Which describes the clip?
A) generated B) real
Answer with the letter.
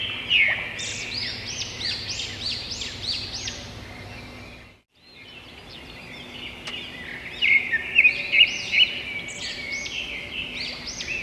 B